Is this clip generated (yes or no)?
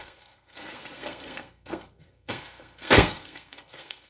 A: yes